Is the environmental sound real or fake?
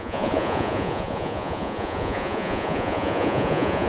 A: fake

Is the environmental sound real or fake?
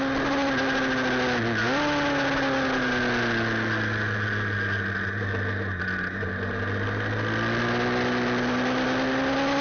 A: real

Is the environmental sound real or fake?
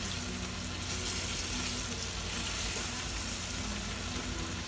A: real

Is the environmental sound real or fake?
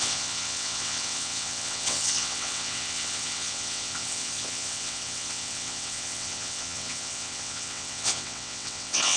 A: fake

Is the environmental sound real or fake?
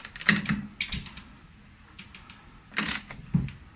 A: real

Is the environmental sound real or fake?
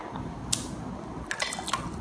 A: real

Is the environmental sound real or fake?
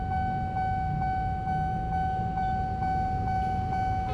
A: real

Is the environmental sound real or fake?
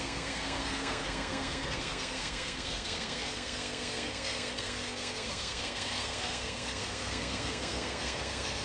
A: fake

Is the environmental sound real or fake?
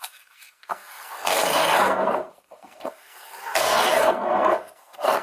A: fake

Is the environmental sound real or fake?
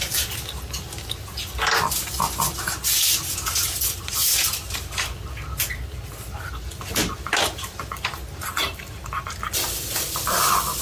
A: real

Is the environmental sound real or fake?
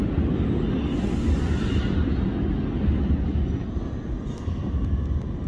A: real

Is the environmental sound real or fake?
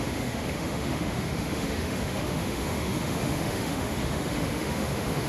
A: fake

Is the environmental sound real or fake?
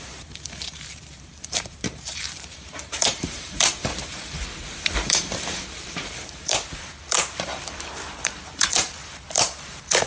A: fake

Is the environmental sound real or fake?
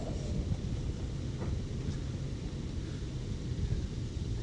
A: real